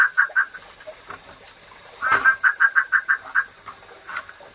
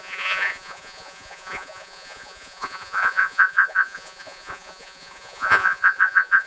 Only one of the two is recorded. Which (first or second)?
first